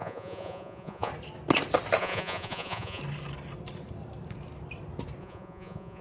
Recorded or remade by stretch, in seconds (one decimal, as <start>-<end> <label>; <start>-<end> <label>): 0.0-1.1 remade; 1.1-2.0 recorded; 2.0-3.0 remade; 3.0-5.2 recorded; 5.2-6.0 remade